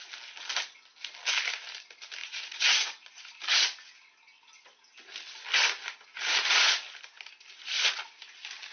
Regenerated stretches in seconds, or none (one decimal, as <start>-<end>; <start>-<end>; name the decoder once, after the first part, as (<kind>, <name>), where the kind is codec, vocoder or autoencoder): 2.2-3.2 (vocoder, Vocos)